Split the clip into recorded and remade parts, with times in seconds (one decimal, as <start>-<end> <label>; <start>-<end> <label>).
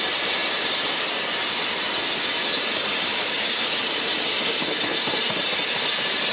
0.0-0.4 recorded; 0.4-4.0 remade; 4.0-6.3 recorded